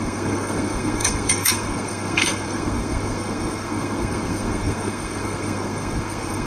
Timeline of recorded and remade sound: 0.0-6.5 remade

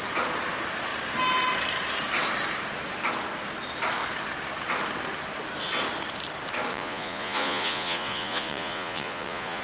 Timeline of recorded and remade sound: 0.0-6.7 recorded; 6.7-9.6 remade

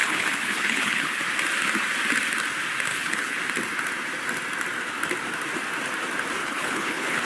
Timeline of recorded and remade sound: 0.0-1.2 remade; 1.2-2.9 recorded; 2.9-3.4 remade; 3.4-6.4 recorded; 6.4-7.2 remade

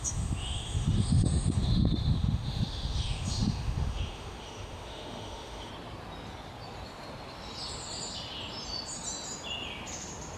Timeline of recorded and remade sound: 0.0-5.7 remade; 5.7-10.4 recorded

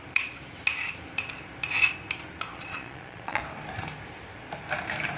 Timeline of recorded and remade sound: 0.0-2.5 recorded; 2.5-3.4 remade; 3.4-5.2 recorded

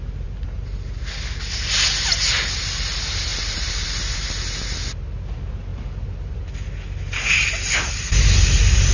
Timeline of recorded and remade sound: 0.0-8.9 recorded

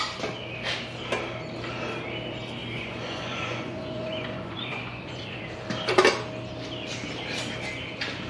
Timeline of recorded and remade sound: 0.0-2.6 recorded; 2.6-5.4 remade; 5.4-8.3 recorded

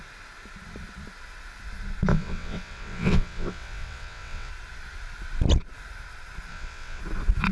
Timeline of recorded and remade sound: 0.0-2.1 recorded; 2.1-4.5 remade; 4.5-6.5 recorded; 6.5-7.0 remade; 7.0-7.5 recorded